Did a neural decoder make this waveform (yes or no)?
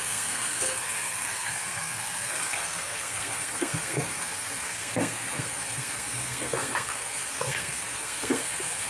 yes